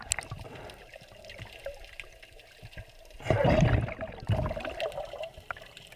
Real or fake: real